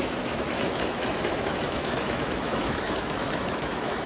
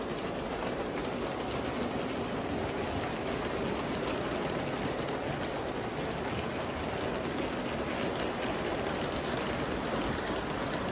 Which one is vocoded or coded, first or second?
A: first